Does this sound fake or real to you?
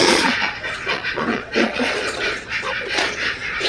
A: fake